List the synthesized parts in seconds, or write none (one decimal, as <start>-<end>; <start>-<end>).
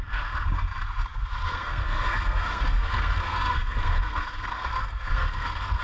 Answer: 0.0-5.8